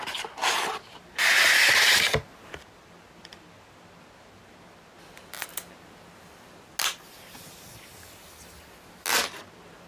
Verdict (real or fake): real